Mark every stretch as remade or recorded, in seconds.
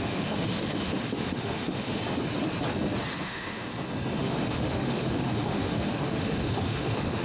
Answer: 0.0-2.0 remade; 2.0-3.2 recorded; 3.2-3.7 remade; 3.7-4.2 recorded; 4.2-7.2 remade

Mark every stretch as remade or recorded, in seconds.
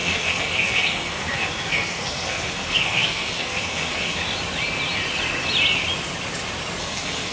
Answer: 0.0-4.2 remade; 4.2-6.8 recorded; 6.8-7.3 remade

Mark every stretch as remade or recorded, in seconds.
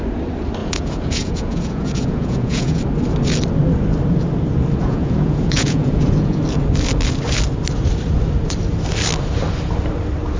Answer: 0.0-0.6 recorded; 0.6-2.8 remade; 2.8-4.8 recorded; 4.8-6.4 remade; 6.4-10.4 recorded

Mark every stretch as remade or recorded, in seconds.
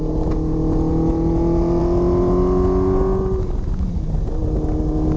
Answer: 0.0-5.2 recorded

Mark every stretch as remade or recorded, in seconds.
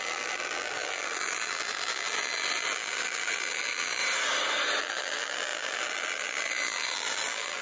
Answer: 0.0-4.0 remade; 4.0-4.8 recorded; 4.8-7.6 remade